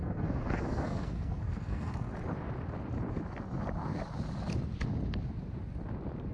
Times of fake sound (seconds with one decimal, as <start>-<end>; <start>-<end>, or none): 0.0-2.1